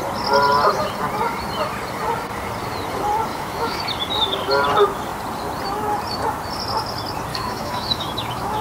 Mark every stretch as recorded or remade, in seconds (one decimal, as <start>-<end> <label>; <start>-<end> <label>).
0.0-3.3 recorded; 3.3-3.8 remade; 3.8-7.3 recorded; 7.3-8.6 remade